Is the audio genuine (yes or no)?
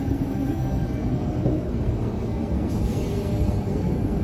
no